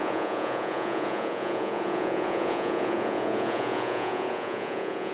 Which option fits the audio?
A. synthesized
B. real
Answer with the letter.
A